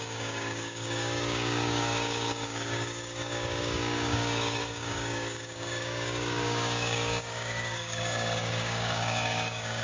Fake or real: fake